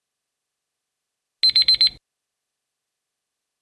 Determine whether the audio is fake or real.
real